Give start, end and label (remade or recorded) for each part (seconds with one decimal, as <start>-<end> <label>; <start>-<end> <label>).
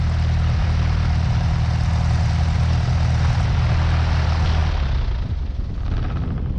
0.0-6.6 recorded